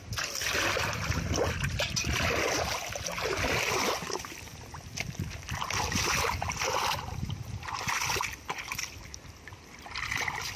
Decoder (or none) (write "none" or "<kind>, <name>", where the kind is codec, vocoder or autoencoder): none